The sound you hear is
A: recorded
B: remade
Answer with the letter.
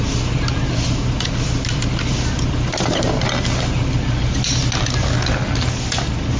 A